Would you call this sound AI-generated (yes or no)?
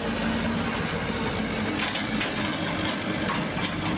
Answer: no